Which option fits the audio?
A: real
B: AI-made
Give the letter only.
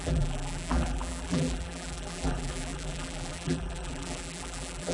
B